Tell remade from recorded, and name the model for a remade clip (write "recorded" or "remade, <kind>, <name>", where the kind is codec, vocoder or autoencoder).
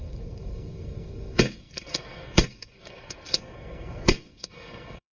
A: remade, codec, SNAC